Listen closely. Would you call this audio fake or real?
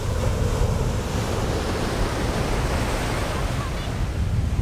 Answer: real